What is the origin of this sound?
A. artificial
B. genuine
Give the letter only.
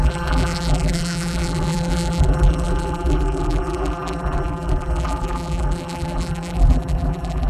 A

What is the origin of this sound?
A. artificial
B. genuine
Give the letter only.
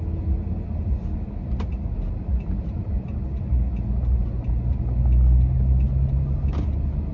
B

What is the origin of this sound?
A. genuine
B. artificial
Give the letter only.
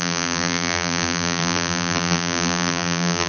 B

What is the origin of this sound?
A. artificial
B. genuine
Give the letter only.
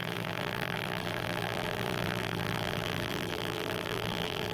A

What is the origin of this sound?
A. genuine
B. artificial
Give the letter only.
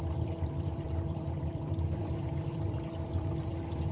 B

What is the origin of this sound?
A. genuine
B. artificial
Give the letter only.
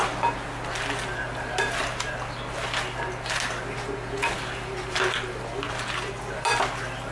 A